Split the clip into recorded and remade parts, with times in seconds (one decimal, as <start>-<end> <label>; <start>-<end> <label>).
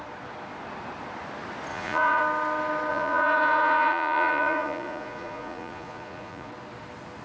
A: 0.0-1.7 recorded; 1.7-2.2 remade; 2.2-2.9 recorded; 2.9-6.5 remade; 6.5-7.2 recorded